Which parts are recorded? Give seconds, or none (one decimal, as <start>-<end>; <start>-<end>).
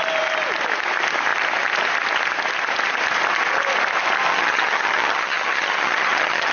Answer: 0.0-4.3